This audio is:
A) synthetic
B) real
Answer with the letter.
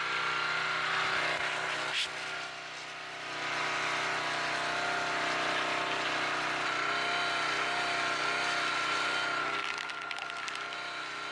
B